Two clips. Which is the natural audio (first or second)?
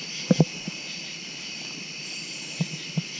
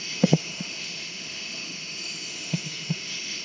first